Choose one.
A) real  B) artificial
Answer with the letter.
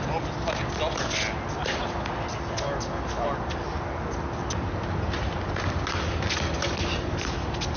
A